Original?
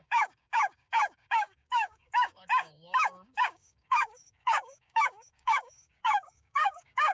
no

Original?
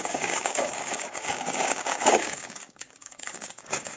no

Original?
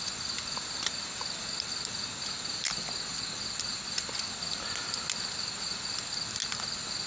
yes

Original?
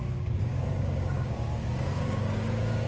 no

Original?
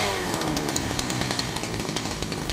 no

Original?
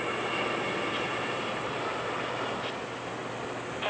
yes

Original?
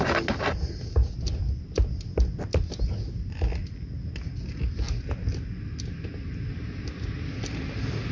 yes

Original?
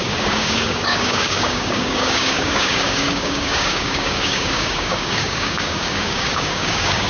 no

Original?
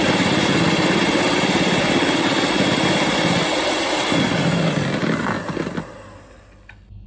yes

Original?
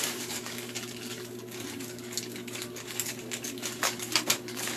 no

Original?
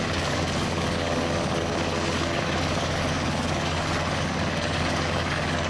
no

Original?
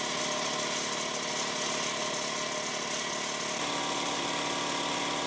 yes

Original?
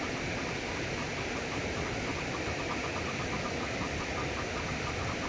yes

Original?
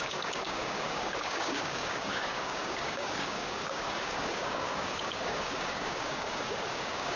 no